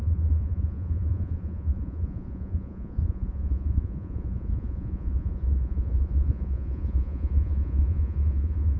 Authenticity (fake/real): fake